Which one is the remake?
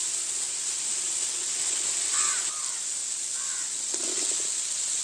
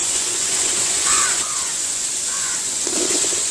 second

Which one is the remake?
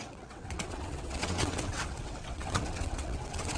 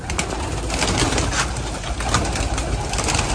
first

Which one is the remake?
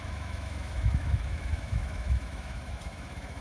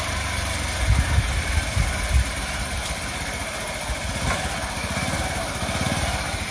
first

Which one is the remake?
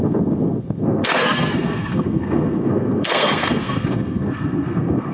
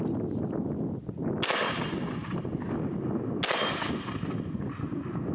first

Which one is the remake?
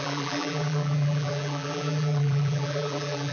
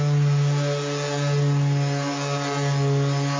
first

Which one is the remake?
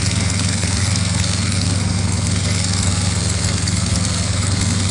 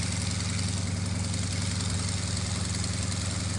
first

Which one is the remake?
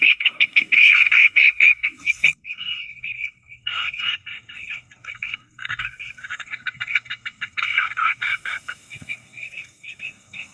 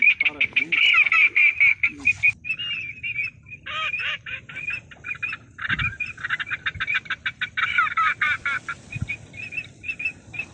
first